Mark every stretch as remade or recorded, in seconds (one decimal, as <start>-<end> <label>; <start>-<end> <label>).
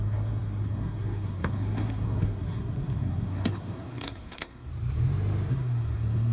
0.0-4.7 remade; 4.7-5.5 recorded; 5.5-6.3 remade